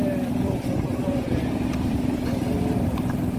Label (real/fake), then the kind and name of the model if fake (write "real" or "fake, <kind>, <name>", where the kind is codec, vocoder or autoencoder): fake, vocoder, BigVGAN v2